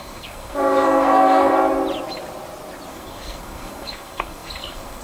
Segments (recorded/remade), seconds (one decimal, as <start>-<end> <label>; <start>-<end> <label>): 0.0-1.5 remade; 1.5-2.9 recorded; 2.9-5.0 remade

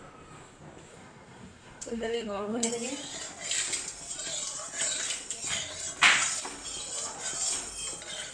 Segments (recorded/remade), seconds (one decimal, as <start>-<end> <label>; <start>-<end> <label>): 0.0-0.9 recorded; 0.9-2.7 remade; 2.7-8.3 recorded

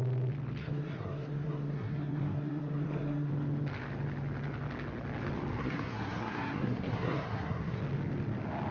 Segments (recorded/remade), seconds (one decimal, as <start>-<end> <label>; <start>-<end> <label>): 0.0-0.6 recorded; 0.6-3.3 remade; 3.3-5.6 recorded; 5.6-7.8 remade; 7.8-8.7 recorded

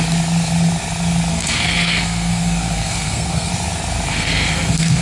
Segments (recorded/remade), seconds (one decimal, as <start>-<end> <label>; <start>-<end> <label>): 0.0-1.3 recorded; 1.3-3.5 remade; 3.5-4.1 recorded; 4.1-5.0 remade

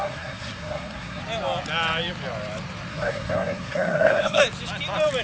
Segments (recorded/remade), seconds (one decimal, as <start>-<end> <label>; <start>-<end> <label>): 0.0-1.2 remade; 1.2-2.9 recorded; 2.9-4.4 remade; 4.4-5.2 recorded